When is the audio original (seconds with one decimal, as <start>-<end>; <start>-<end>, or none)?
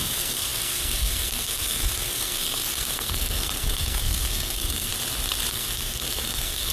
4.9-5.5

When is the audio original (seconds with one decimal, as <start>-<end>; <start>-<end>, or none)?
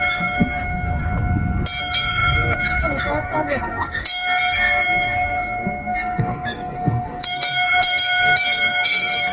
1.0-1.8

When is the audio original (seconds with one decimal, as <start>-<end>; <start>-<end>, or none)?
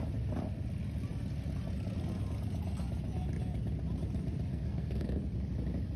0.0-4.5; 5.2-6.0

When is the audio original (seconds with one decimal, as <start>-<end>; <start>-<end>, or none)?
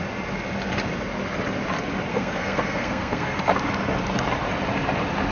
0.0-2.1; 3.4-5.3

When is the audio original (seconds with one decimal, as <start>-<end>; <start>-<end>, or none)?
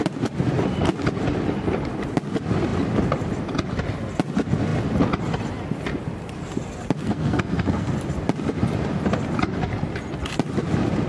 0.0-7.0; 7.9-11.1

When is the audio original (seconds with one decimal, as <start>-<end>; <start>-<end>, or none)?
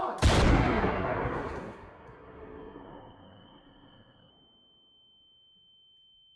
0.0-0.5; 4.3-6.4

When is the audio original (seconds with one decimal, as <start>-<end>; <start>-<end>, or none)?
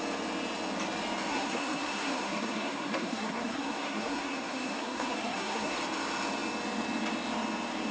0.0-1.3; 5.8-7.9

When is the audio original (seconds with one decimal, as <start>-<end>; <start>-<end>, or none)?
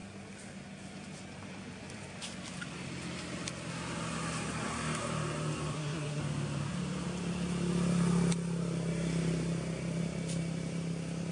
0.0-5.7; 6.2-11.3